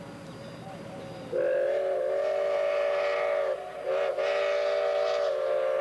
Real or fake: real